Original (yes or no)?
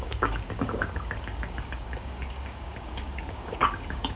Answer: no